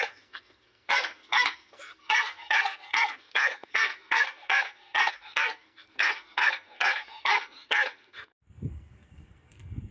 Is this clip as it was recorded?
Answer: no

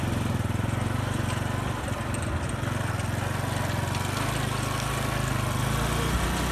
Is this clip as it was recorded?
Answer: yes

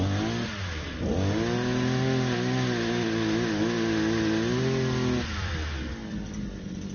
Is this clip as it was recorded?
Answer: yes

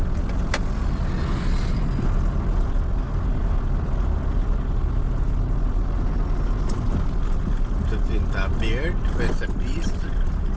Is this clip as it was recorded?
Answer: yes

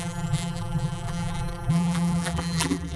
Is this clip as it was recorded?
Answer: no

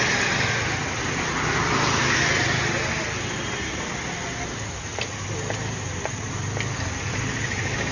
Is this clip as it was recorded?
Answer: yes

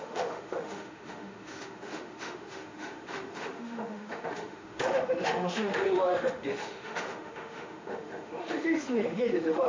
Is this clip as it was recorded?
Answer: no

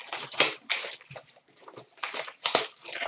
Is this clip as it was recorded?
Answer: no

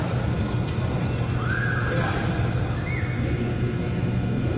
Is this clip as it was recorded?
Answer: yes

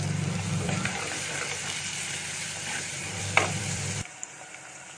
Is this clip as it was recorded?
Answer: no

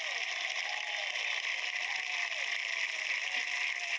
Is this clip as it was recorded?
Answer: yes